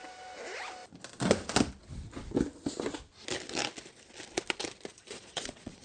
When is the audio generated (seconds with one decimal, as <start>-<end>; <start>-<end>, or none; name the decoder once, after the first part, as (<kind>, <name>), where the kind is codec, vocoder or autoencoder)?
4.9-5.8 (vocoder, Vocos)